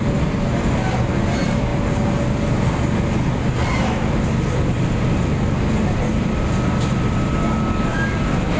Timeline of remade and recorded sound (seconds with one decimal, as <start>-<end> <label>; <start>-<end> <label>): 0.0-8.6 recorded